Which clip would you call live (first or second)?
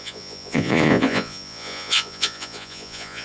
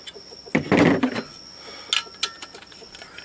second